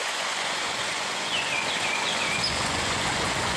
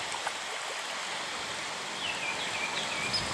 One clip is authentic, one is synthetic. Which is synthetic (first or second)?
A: first